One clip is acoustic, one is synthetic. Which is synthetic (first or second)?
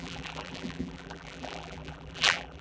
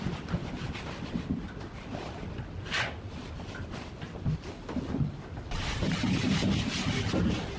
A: first